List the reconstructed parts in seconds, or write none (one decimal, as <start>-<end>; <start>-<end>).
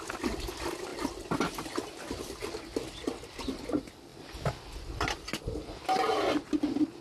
none